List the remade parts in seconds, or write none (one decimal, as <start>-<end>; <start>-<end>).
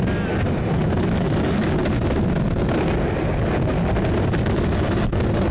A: none